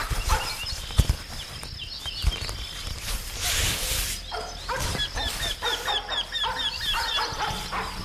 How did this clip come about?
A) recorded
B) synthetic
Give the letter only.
A